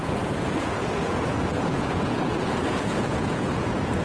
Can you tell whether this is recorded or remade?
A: remade